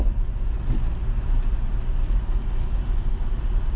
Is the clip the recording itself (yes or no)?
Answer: yes